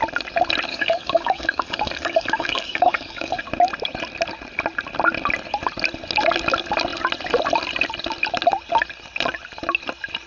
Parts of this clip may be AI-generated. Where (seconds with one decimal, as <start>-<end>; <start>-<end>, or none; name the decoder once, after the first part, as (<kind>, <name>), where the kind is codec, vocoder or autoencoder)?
0.7-3.4 (codec, DAC)

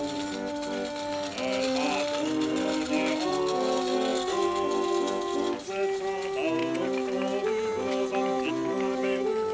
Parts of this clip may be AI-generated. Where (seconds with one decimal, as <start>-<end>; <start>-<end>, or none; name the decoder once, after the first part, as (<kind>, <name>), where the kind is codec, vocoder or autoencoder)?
none

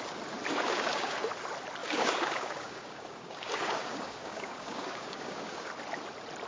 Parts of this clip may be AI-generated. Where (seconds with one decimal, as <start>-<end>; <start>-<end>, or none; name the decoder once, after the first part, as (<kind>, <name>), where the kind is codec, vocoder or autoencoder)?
0.5-1.3 (codec, DAC); 1.8-5.7

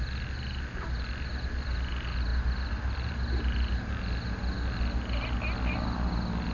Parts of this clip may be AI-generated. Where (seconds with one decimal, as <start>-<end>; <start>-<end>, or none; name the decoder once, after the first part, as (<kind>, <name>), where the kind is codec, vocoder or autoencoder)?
none

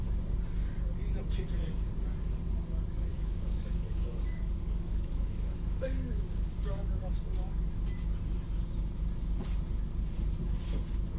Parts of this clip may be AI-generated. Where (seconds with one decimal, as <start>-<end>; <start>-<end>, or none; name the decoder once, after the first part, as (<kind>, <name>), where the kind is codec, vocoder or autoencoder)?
3.1-7.0 (codec, DAC)

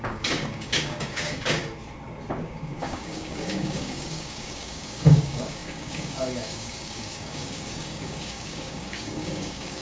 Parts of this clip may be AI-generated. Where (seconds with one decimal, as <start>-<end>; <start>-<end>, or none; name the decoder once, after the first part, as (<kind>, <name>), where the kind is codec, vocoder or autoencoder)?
0.0-1.6 (codec, DAC); 2.4-9.8